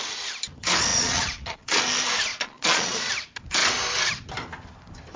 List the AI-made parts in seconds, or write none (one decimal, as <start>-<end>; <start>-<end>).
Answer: 0.9-1.8; 2.3-3.1